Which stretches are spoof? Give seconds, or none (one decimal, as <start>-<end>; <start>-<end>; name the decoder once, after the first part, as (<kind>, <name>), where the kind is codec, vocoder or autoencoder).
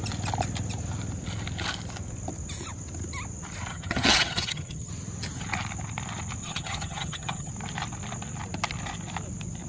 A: 3.7-4.9 (vocoder, HiFi-GAN); 6.4-7.5